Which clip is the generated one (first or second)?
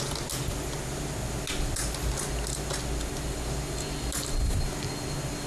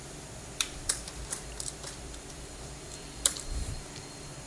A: second